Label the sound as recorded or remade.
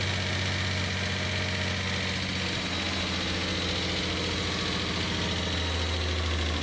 recorded